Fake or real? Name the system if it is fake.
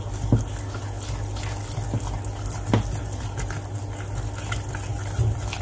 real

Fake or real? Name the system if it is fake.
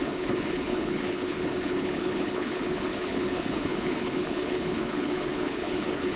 fake, codec, HILCodec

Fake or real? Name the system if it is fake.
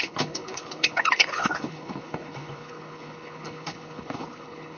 fake, codec, HILCodec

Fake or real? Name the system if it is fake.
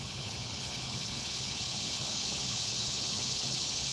fake, codec, HILCodec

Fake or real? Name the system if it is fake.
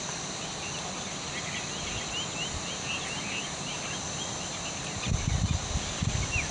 real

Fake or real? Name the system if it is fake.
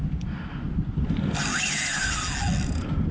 real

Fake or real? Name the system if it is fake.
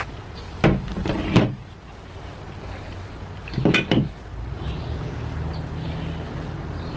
real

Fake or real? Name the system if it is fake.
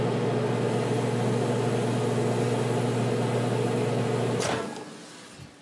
real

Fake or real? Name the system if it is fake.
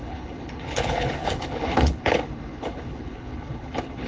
fake, codec, HILCodec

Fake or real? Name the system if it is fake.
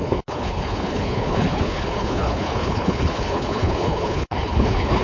fake, codec, HILCodec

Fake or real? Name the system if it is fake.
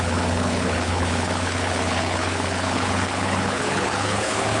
fake, codec, HILCodec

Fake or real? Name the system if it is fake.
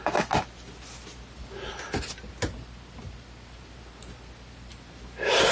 real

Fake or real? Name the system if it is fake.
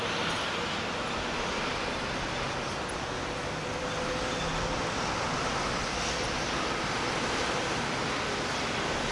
real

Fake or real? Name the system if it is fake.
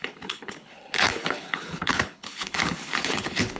fake, codec, HILCodec